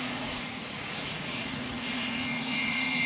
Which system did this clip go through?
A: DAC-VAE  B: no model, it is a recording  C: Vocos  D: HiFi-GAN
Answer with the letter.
C